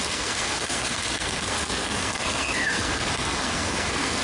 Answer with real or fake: fake